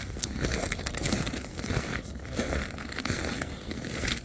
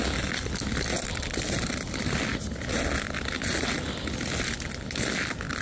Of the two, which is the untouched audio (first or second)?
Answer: second